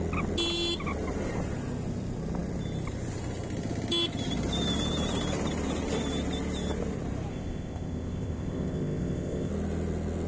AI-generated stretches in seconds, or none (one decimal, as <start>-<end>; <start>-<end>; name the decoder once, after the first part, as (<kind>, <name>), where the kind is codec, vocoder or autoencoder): 7.3-9.5 (codec, ZipCodec)